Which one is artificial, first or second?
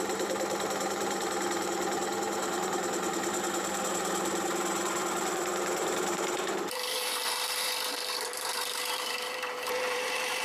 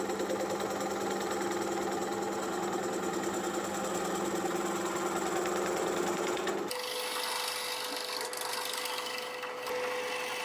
first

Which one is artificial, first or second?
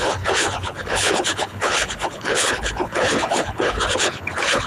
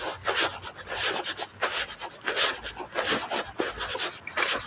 first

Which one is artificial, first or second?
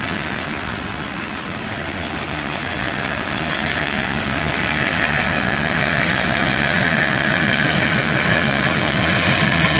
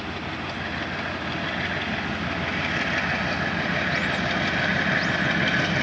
first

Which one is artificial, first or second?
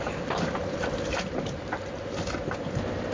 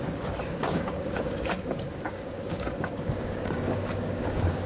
second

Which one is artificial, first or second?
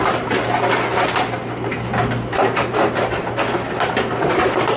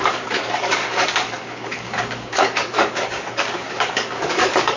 second